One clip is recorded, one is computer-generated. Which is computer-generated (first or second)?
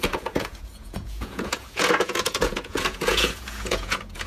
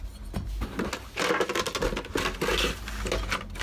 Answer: first